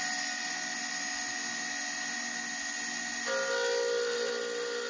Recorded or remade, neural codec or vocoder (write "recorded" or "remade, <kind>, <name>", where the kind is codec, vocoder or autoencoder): recorded